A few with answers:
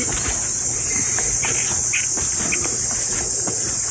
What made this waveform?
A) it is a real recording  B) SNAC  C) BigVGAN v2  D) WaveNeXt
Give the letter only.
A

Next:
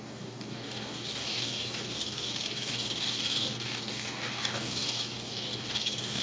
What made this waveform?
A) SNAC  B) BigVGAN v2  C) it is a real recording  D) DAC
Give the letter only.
D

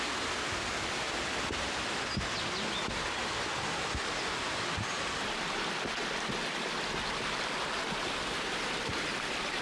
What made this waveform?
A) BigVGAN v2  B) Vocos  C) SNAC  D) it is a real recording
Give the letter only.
D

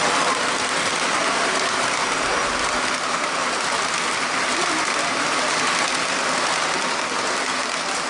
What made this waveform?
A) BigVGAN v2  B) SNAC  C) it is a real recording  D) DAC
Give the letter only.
C